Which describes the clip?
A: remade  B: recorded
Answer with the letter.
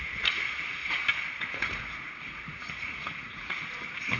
A